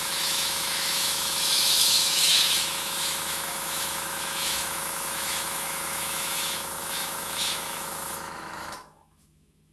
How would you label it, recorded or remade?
remade